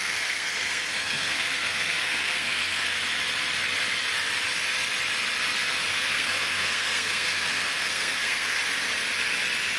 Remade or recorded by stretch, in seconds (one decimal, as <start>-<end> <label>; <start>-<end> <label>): 0.0-3.0 remade; 3.0-5.9 recorded; 5.9-8.6 remade; 8.6-9.8 recorded